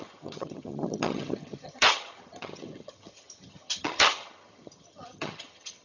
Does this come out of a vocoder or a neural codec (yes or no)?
yes